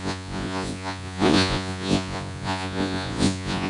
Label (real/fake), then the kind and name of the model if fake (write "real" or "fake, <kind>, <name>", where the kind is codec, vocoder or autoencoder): fake, vocoder, Vocos